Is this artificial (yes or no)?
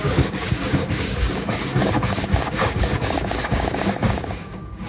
yes